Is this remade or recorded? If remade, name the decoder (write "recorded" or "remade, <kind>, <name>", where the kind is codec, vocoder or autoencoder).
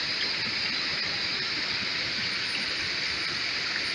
remade, vocoder, BigVGAN v2